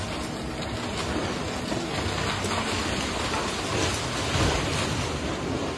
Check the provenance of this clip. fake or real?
real